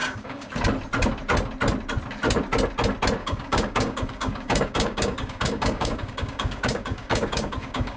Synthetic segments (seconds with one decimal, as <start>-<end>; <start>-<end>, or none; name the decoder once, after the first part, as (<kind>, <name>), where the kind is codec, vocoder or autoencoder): 0.0-0.5 (codec, DAC); 3.2-8.0